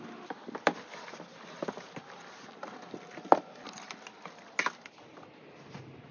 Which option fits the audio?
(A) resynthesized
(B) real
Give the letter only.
B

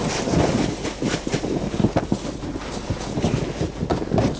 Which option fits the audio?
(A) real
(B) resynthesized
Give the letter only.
A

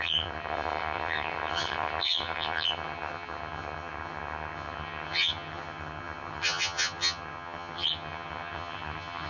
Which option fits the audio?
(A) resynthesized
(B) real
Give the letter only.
A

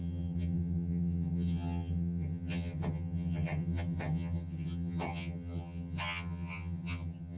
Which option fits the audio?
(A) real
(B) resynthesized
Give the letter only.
B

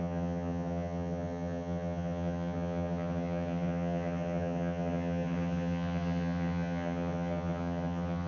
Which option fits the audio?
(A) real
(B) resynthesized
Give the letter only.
B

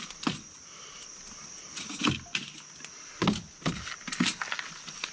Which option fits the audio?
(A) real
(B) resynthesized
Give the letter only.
A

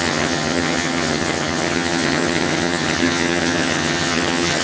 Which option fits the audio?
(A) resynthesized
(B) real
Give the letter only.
A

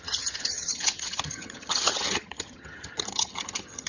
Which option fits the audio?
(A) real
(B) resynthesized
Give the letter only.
B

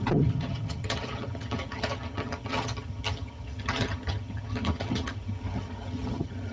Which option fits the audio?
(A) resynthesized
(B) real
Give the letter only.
A